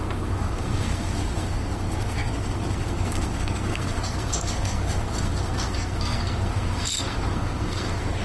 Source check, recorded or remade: remade